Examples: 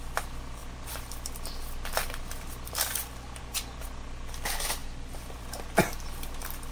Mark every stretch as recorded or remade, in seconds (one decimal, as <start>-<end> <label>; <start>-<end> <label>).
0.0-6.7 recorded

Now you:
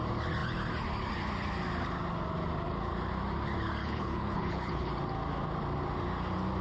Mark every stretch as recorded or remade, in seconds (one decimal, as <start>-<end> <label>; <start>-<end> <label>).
0.0-3.8 recorded; 3.8-4.9 remade; 4.9-6.6 recorded

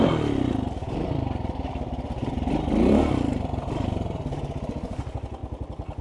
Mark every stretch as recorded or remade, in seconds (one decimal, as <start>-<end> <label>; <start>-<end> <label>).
0.0-0.8 recorded; 0.8-4.4 remade; 4.4-5.4 recorded; 5.4-6.0 remade

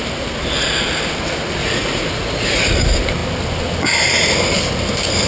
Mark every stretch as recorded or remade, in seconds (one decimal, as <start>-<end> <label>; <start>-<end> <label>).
0.0-1.6 recorded; 1.6-2.8 remade; 2.8-5.3 recorded